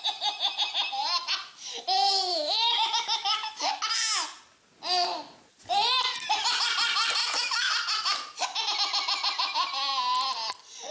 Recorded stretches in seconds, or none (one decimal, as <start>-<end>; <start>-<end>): 0.0-2.3; 3.8-7.2; 7.7-10.9